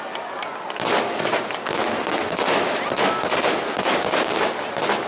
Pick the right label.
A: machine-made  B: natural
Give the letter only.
B